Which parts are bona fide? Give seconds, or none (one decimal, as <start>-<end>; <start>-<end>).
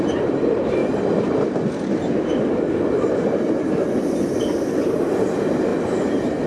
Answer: 0.8-4.7; 5.7-6.5